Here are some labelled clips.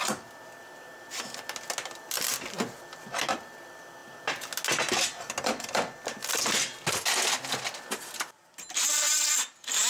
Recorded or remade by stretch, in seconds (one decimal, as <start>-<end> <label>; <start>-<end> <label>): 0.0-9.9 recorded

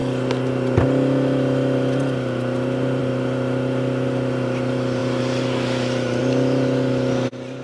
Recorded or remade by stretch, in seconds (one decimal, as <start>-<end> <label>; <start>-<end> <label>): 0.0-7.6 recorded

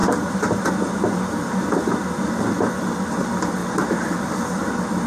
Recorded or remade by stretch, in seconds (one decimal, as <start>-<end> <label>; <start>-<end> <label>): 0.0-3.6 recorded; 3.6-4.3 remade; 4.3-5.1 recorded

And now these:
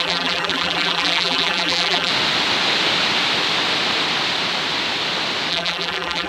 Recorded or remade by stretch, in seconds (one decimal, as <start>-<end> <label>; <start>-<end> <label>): 0.0-2.1 remade; 2.1-5.5 recorded; 5.5-6.3 remade

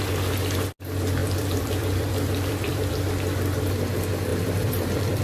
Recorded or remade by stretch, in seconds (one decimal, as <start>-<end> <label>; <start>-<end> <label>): 0.0-1.2 recorded; 1.2-2.9 remade; 2.9-4.3 recorded; 4.3-5.2 remade

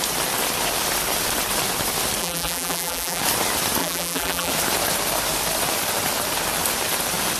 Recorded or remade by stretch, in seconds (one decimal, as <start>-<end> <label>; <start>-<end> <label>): 0.0-2.2 recorded; 2.2-3.2 remade; 3.2-3.8 recorded; 3.8-4.5 remade; 4.5-7.4 recorded